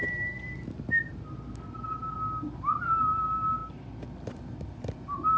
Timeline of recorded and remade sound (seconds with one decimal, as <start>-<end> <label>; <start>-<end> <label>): 0.0-5.4 recorded